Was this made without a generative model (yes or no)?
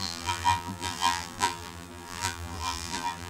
no